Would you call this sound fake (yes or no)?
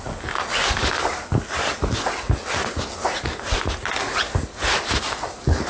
no